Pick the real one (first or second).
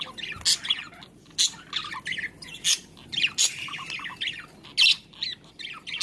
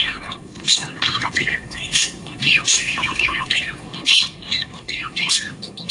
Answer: first